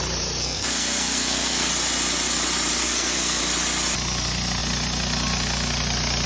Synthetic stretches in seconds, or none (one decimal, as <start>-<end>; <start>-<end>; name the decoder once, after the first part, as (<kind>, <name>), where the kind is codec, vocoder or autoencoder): 0.4-1.7 (codec, SNAC); 2.8-3.4